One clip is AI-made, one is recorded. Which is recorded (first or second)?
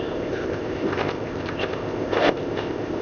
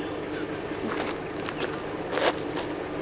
second